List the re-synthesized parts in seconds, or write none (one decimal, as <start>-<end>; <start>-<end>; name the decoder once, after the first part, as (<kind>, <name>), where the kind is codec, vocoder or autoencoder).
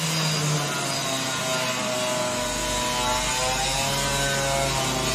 none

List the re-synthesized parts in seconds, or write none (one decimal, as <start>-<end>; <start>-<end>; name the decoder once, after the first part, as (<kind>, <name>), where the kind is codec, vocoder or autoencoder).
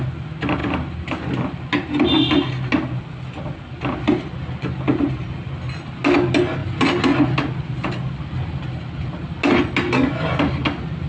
none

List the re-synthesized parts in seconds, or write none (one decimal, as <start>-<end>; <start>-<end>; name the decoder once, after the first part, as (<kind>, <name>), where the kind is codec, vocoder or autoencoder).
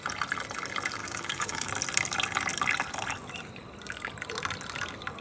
1.0-1.7 (codec, DAC)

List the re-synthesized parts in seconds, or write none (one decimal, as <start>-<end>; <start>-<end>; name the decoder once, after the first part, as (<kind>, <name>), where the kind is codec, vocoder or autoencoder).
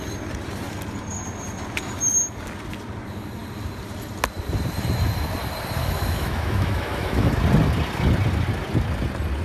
5.8-7.3 (autoencoder, DAC-VAE)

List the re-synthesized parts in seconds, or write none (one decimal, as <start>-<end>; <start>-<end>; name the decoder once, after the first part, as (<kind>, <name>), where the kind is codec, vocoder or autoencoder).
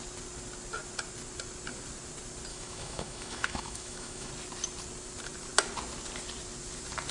2.5-4.3 (autoencoder, DAC-VAE)